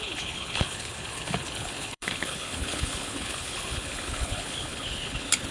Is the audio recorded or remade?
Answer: remade